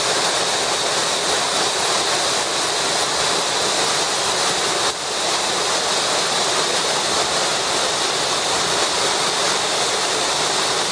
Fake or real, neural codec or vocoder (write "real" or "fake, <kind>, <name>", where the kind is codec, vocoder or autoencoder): real